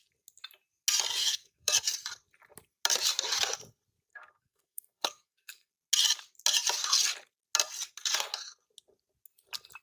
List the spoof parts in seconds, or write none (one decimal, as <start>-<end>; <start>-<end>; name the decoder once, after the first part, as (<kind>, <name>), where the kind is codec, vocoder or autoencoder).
1.2-1.7 (codec, SNAC); 4.1-5.7